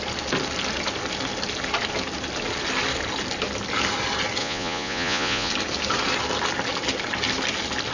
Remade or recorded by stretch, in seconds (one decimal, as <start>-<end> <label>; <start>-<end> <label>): 0.0-4.4 recorded; 4.4-5.5 remade; 5.5-7.9 recorded